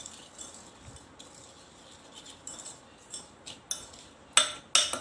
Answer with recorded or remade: recorded